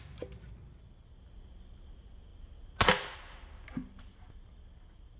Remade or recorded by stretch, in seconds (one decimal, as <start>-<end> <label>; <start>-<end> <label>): 0.0-5.2 recorded